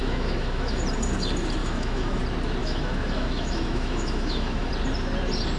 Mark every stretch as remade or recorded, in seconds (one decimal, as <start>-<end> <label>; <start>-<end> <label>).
0.0-0.8 remade; 0.8-1.6 recorded; 1.6-2.2 remade; 2.2-2.6 recorded; 2.6-4.7 remade; 4.7-5.6 recorded